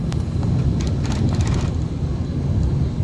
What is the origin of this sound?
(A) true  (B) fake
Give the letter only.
A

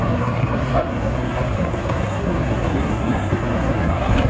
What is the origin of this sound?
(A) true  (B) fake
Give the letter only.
B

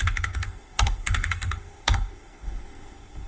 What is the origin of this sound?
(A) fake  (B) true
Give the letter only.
A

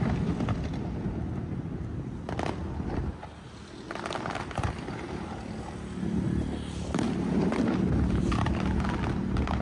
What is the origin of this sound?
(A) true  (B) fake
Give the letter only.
A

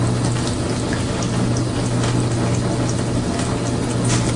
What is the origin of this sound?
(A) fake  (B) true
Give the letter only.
B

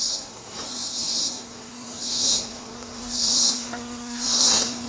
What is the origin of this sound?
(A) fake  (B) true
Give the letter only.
A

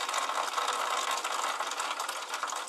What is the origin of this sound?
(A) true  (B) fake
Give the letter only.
A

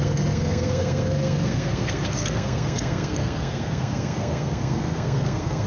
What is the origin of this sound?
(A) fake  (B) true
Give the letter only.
A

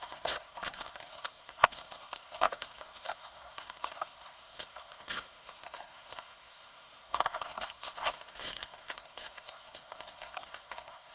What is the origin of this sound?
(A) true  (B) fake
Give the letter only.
B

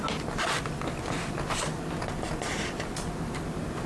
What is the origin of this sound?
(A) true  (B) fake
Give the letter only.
A